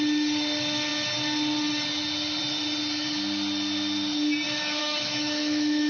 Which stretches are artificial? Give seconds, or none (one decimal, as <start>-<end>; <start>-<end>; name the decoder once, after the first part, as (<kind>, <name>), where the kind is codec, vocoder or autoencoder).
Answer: 4.8-5.9 (autoencoder, DAC-VAE)